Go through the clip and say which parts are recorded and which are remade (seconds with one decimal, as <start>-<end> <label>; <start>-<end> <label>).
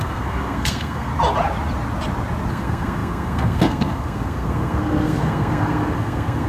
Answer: 0.0-1.1 remade; 1.1-2.5 recorded; 2.5-6.5 remade